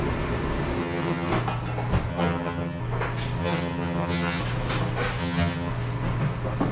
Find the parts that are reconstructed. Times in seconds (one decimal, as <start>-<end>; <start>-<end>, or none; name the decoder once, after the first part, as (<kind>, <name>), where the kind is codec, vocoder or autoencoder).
0.8-1.3 (vocoder, HiFi-GAN); 2.1-2.8; 3.4-4.4; 5.2-5.7